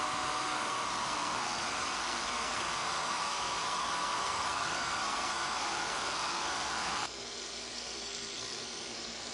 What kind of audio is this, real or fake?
fake